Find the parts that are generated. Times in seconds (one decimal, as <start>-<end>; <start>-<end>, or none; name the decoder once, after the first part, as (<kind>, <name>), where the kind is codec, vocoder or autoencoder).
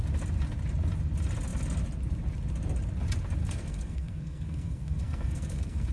3.4-5.9 (codec, SNAC)